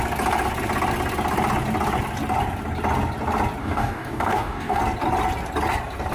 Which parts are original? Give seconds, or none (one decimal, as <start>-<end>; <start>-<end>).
0.0-3.6; 4.8-6.1